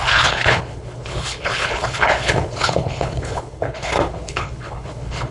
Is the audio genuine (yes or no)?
no